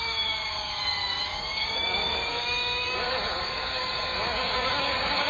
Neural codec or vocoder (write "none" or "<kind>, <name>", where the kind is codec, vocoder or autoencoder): codec, DAC